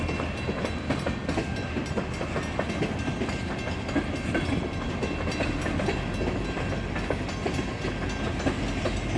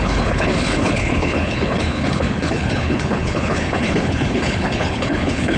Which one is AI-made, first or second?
second